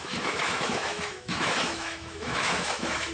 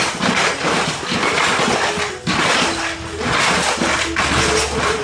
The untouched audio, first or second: second